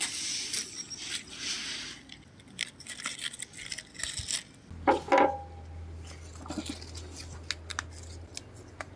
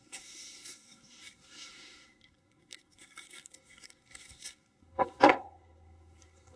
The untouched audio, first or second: first